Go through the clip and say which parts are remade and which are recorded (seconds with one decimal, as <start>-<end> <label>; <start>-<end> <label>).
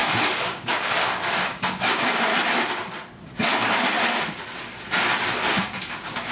0.0-2.3 remade; 2.3-5.6 recorded; 5.6-6.3 remade